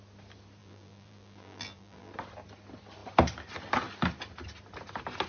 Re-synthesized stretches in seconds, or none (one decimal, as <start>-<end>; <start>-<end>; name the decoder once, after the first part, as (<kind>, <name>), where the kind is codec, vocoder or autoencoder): 0.6-2.1 (vocoder, BigVGAN v2)